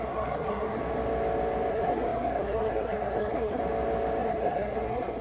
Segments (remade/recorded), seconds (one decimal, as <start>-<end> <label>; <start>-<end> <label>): 0.0-0.8 remade; 0.8-1.7 recorded; 1.7-3.6 remade; 3.6-4.2 recorded; 4.2-5.2 remade